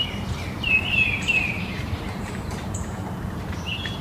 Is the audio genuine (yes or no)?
no